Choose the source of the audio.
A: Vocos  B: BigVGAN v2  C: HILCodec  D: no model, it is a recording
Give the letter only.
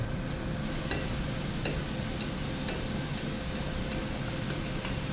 D